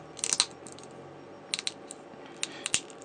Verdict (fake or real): real